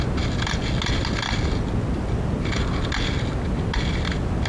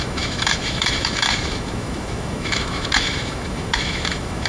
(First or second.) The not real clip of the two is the second